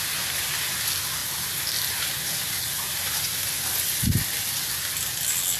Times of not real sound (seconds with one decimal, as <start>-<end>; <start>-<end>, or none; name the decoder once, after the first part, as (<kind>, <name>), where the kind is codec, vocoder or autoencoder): none